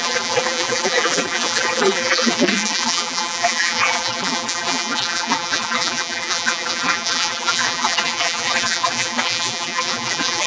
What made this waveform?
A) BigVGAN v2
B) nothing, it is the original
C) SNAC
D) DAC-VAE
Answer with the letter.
A